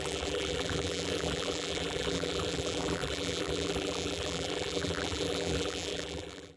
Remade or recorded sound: remade